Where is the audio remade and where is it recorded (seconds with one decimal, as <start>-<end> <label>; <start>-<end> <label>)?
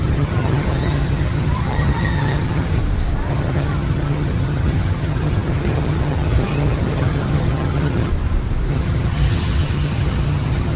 0.0-2.8 remade; 2.8-3.3 recorded; 3.3-8.1 remade; 8.1-8.7 recorded; 8.7-10.8 remade